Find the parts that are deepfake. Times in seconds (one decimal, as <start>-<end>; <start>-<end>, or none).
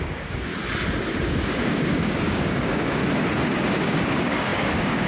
0.0-0.5; 1.2-3.0; 3.7-5.1